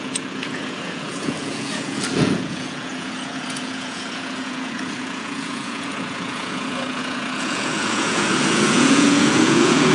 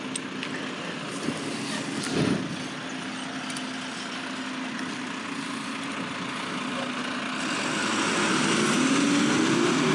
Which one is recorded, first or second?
second